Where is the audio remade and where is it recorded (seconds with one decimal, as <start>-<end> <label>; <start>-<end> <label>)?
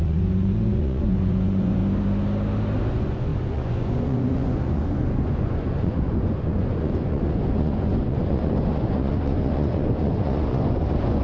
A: 0.0-1.8 remade; 1.8-2.9 recorded; 2.9-11.2 remade